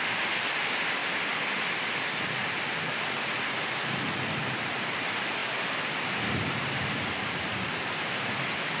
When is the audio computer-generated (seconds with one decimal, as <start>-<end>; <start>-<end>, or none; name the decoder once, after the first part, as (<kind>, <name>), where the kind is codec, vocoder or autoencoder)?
1.0-1.9 (vocoder, BigVGAN v2)